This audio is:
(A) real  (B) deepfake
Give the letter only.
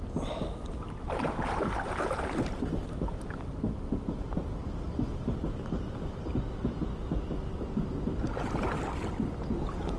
A